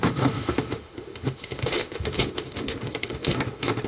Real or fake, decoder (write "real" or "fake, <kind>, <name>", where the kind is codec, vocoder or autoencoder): fake, autoencoder, DAC-VAE